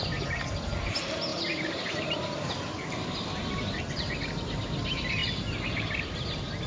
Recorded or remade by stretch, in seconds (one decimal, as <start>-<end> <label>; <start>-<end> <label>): 0.0-1.3 recorded; 1.3-2.5 remade; 2.5-5.2 recorded; 5.2-5.9 remade; 5.9-6.7 recorded